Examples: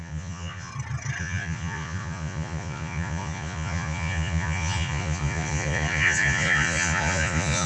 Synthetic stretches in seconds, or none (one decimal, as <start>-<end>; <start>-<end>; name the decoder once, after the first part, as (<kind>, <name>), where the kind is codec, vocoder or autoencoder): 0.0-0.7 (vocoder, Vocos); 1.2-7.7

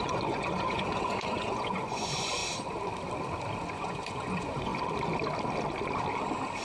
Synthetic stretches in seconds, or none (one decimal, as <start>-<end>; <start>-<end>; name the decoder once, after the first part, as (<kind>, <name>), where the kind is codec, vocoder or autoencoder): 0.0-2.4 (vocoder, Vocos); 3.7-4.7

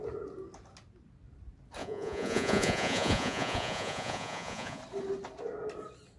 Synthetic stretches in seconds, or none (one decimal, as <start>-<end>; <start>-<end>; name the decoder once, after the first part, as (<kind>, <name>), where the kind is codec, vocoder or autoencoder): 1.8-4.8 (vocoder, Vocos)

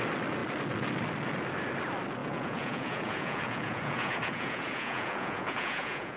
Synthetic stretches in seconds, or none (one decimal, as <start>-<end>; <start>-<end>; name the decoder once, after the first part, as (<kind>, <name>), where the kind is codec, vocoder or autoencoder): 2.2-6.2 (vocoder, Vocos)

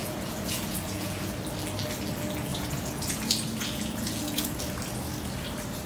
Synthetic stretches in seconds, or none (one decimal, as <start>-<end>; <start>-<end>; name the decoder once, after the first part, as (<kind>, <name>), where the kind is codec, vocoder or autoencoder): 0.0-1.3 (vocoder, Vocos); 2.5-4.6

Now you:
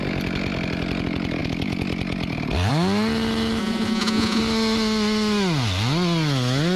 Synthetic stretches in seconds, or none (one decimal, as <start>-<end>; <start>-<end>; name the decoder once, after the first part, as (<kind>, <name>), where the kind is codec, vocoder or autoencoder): 3.6-4.4 (vocoder, Vocos)

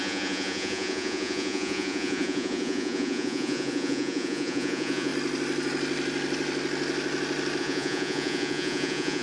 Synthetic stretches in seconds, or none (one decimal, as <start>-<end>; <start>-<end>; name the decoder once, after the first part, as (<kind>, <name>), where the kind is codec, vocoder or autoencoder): 0.0-5.1 (vocoder, Vocos); 7.6-9.2

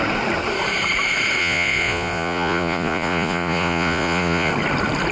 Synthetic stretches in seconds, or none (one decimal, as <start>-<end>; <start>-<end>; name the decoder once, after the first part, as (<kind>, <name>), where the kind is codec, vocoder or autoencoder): 1.4-4.5 (vocoder, Vocos)